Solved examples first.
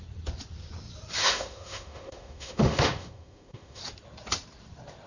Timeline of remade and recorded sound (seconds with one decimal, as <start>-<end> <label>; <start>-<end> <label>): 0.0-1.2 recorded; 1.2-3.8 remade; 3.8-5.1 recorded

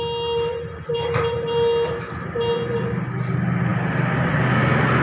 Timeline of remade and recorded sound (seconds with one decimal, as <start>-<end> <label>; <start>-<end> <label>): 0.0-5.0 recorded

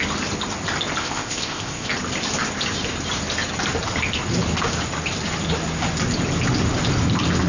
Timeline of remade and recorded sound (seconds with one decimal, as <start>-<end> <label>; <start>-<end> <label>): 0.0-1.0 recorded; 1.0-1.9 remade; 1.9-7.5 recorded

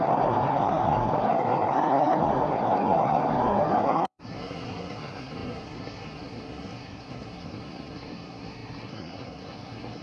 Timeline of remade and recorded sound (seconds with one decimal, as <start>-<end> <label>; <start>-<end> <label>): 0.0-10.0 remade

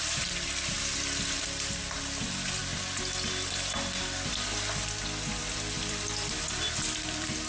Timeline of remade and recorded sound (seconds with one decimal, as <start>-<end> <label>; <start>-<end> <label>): 0.0-2.6 remade; 2.6-5.4 recorded; 5.4-7.5 remade